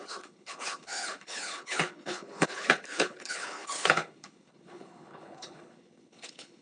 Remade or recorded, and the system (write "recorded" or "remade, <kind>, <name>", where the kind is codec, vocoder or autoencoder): remade, codec, HILCodec